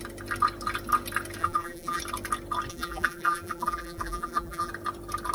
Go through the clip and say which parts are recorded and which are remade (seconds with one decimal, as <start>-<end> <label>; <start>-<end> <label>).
0.0-1.4 recorded; 1.4-2.0 remade; 2.0-2.7 recorded; 2.7-4.7 remade; 4.7-5.3 recorded